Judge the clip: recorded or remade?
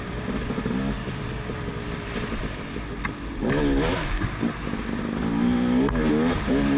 recorded